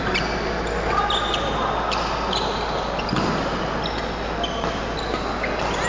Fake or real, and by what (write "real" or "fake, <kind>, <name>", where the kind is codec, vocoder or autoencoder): real